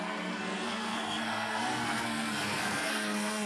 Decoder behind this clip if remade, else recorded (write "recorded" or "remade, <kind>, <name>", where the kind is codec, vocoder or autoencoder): remade, codec, SNAC